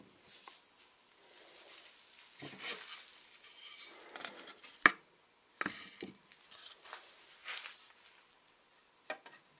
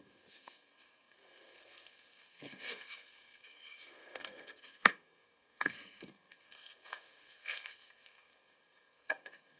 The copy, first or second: second